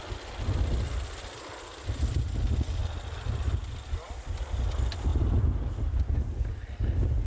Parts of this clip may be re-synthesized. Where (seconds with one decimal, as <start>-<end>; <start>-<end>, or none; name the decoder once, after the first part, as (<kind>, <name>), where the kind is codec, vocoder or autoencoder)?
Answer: none